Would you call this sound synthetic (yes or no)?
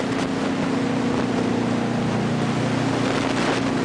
no